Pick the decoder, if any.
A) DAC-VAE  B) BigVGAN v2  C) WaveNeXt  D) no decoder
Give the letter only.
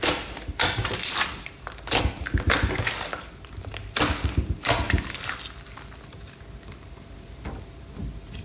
D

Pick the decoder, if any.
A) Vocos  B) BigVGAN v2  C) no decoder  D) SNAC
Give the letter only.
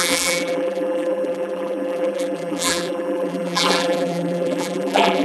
B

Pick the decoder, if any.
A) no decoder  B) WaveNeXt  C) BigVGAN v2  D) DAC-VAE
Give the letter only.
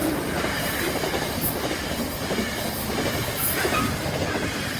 A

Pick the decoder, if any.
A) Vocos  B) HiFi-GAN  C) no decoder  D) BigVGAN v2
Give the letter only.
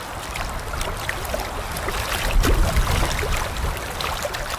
C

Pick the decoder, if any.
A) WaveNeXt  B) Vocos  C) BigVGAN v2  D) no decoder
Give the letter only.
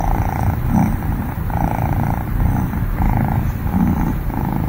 C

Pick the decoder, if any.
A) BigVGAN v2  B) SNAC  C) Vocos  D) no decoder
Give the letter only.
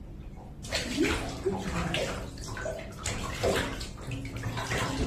D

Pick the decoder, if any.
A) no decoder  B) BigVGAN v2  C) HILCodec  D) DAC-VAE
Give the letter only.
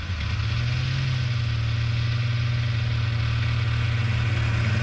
A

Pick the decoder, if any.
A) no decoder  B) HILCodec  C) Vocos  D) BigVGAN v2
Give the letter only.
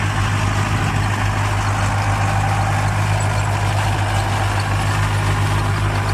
A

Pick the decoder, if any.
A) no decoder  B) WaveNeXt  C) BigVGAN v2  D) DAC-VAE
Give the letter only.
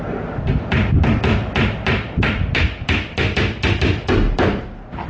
A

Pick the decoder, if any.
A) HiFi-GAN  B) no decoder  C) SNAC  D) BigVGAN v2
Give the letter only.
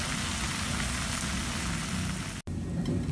B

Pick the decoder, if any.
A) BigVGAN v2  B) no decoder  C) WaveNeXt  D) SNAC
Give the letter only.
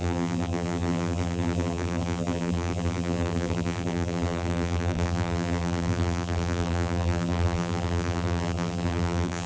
A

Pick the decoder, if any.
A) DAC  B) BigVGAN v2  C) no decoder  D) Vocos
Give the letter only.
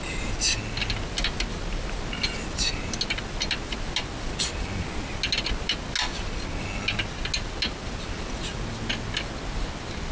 C